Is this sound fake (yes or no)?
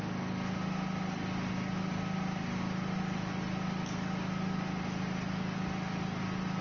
no